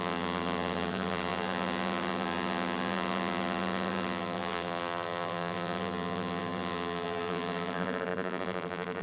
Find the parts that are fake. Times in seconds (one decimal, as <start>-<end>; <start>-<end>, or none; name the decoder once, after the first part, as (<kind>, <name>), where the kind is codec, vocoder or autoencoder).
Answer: 0.0-9.0 (vocoder, BigVGAN v2)